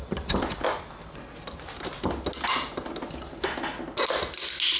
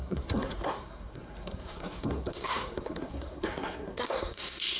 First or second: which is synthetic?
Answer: second